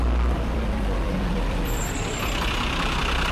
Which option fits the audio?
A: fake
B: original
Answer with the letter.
A